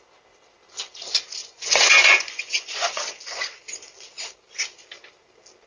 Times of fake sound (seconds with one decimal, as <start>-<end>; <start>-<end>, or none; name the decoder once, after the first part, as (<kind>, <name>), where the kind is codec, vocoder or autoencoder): 1.4-3.0 (vocoder, Vocos)